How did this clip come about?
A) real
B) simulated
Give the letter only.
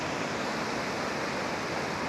A